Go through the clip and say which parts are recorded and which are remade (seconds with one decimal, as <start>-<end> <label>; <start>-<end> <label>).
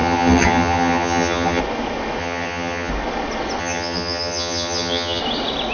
0.0-1.6 remade; 1.6-2.2 recorded; 2.2-2.9 remade; 2.9-3.6 recorded; 3.6-5.2 remade; 5.2-5.7 recorded